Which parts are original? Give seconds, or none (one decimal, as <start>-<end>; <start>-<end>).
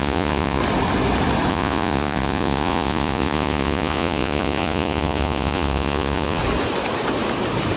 0.6-1.5; 6.4-7.8